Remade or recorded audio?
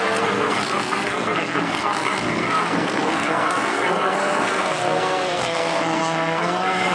remade